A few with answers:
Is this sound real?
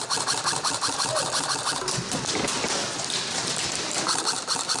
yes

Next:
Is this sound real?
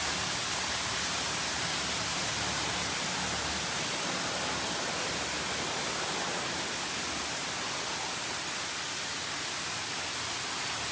yes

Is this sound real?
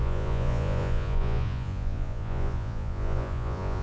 no